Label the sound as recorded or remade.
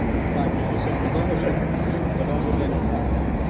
recorded